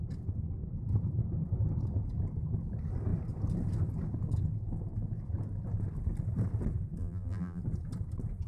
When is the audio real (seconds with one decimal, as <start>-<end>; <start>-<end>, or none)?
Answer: 0.0-7.0; 7.6-8.5